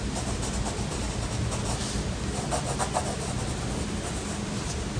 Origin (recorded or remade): recorded